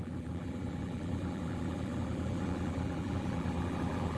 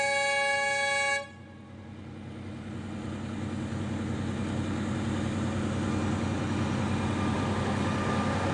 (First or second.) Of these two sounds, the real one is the second